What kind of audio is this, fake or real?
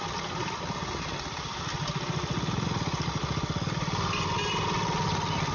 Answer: real